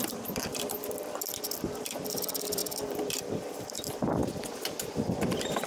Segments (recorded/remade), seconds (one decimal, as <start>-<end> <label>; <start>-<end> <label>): 0.0-4.2 remade; 4.2-5.7 recorded